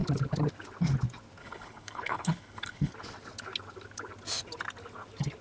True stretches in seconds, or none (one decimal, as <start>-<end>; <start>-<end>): 0.0-1.4; 2.9-5.4